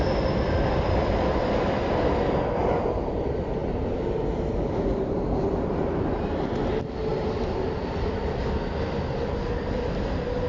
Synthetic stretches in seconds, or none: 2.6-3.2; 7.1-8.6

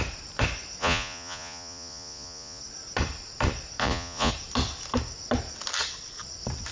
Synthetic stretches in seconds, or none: 0.8-2.6; 3.8-4.3

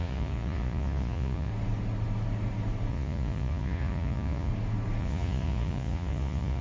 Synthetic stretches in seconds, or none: 0.0-1.5; 2.9-4.5; 5.0-6.6

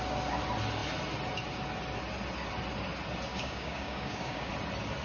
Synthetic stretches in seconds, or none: 3.3-4.5

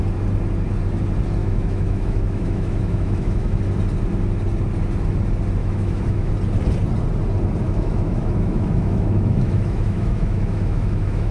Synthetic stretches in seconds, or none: 1.4-3.6; 5.6-6.3; 7.6-11.3

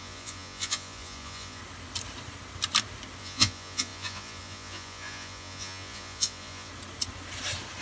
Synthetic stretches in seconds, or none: 0.0-1.6; 3.2-6.7

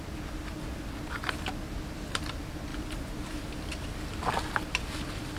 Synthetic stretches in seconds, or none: 2.7-4.0